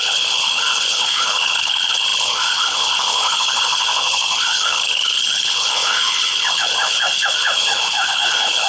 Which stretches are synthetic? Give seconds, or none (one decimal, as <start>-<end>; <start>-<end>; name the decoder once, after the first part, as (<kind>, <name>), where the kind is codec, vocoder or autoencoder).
0.0-8.7 (codec, HILCodec)